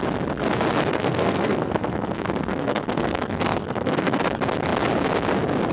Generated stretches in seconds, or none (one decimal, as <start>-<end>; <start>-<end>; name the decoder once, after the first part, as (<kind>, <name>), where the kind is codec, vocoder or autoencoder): 0.9-4.2 (codec, SNAC)